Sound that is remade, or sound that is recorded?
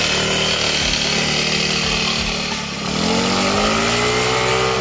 recorded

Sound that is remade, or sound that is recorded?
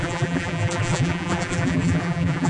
remade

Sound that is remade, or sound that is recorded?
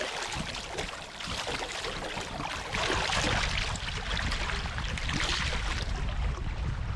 recorded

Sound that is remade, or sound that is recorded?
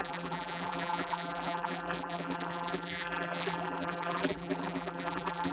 remade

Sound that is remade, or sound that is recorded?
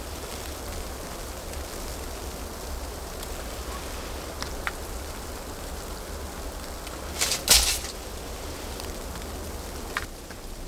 recorded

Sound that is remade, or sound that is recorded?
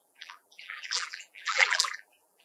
remade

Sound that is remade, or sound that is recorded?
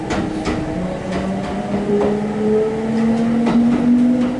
recorded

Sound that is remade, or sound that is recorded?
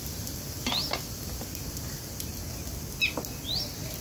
recorded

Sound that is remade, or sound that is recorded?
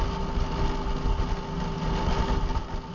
recorded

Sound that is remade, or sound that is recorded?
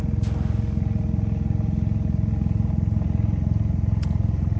recorded